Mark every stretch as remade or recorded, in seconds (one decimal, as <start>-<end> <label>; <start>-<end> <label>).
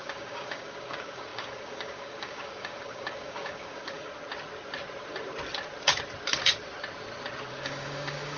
0.0-4.1 remade; 4.1-7.5 recorded; 7.5-8.4 remade